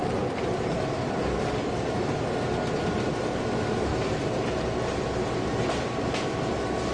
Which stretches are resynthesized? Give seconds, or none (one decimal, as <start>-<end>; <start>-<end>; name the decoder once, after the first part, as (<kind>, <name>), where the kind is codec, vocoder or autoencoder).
0.0-1.4 (vocoder, BigVGAN v2); 3.9-4.5; 5.2-6.1